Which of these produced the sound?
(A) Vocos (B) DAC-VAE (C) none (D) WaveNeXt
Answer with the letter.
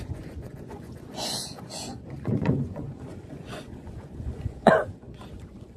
A